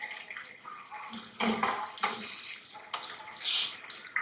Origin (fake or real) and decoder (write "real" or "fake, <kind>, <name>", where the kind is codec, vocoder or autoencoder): real